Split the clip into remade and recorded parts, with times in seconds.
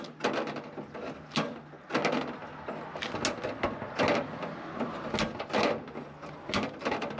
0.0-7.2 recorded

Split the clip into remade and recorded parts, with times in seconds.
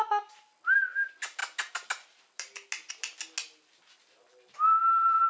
0.0-5.3 recorded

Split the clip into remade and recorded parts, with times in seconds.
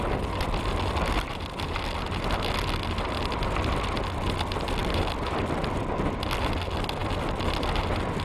0.0-8.2 recorded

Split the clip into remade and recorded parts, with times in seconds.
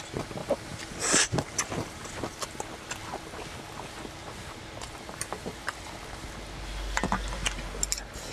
0.0-0.4 recorded; 0.4-2.4 remade; 2.4-4.2 recorded; 4.2-6.0 remade; 6.0-8.3 recorded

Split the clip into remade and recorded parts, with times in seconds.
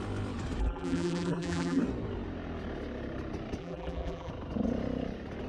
0.0-0.6 recorded; 0.6-1.8 remade; 1.8-3.6 recorded; 3.6-4.3 remade; 4.3-5.5 recorded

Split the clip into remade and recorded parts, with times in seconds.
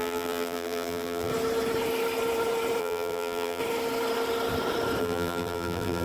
0.0-1.3 remade; 1.3-2.8 recorded; 2.8-3.6 remade; 3.6-5.0 recorded; 5.0-6.0 remade